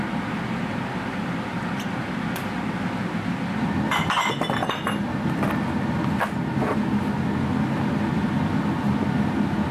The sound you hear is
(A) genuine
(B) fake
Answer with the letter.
A